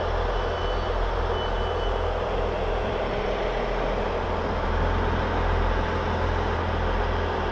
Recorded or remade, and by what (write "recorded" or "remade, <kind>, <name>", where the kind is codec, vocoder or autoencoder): recorded